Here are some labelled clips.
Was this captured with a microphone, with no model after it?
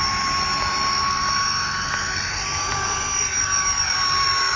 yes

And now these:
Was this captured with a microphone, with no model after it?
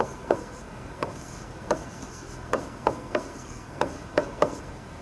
no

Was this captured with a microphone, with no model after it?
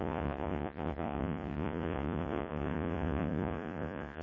no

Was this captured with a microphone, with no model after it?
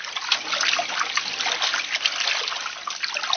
yes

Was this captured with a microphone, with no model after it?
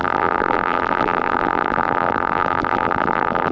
no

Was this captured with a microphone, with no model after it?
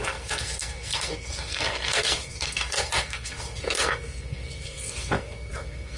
no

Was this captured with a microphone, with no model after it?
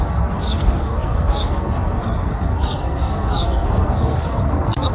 no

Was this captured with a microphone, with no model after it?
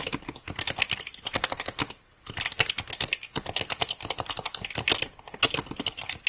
yes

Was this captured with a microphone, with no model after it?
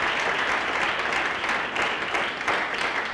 yes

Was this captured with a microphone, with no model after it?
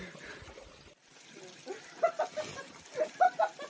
yes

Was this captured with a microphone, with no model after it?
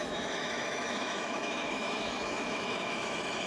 no